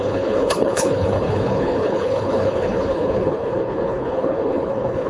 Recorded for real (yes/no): no